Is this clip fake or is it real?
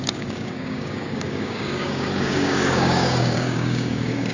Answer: fake